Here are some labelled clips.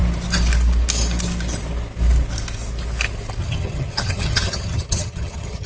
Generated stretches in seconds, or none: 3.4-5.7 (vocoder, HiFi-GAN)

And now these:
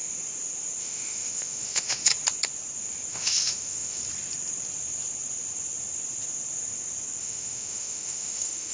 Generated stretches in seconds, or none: 0.8-2.1 (autoencoder, DAC-VAE); 3.1-4.0; 7.2-8.7

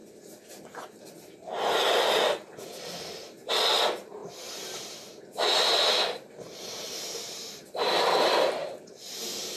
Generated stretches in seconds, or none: 3.8-9.6 (vocoder, BigVGAN v2)

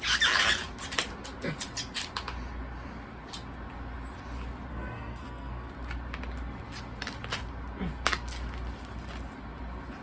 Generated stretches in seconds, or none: 4.7-5.7 (codec, SNAC)

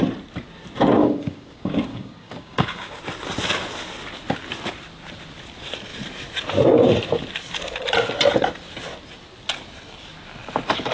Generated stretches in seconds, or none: 1.0-3.0 (codec, DAC)

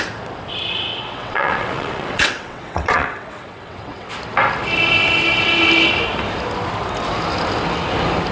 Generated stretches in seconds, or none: 0.9-4.1 (vocoder, WaveNeXt)

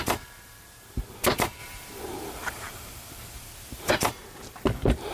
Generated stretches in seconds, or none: 0.0-1.1 (vocoder, BigVGAN v2); 1.6-3.9